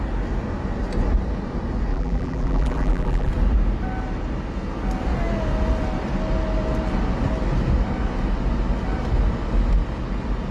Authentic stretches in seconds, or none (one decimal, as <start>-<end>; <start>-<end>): 0.0-1.9; 3.3-10.5